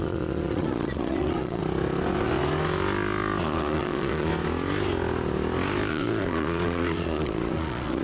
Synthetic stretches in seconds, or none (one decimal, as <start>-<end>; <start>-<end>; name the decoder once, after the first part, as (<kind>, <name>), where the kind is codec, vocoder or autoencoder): 0.0-1.6 (vocoder, Vocos); 3.4-4.3; 5.9-8.0